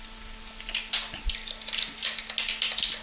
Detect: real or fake real